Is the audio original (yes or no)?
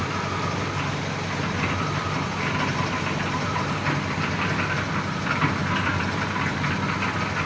yes